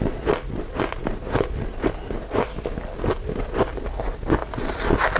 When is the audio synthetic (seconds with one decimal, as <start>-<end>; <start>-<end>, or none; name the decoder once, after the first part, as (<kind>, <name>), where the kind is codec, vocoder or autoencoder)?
none